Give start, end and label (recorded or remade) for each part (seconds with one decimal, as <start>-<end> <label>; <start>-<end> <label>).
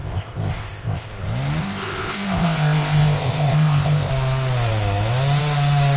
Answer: 0.0-1.1 remade; 1.1-1.6 recorded; 1.6-4.1 remade; 4.1-6.0 recorded